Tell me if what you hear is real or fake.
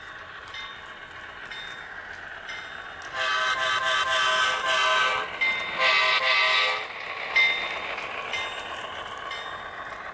real